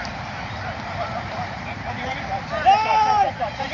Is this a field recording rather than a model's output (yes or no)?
no